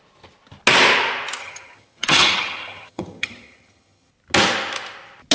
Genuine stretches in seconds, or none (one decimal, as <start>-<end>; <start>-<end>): 0.0-1.4; 4.1-5.3